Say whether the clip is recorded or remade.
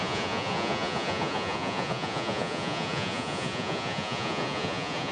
remade